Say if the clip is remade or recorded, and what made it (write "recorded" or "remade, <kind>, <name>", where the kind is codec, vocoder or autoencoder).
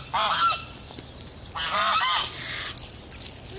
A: recorded